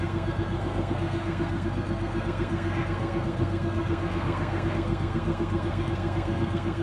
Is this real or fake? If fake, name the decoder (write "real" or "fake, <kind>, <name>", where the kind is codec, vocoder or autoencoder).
fake, codec, SNAC